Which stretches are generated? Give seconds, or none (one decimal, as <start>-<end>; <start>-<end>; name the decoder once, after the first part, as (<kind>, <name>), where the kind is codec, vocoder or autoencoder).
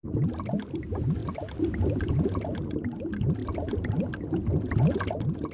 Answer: 3.4-4.4 (vocoder, BigVGAN v2)